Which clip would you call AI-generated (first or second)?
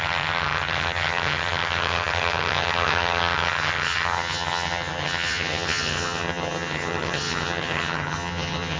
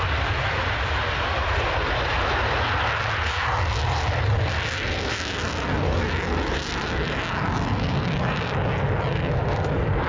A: first